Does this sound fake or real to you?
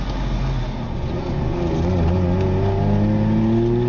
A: real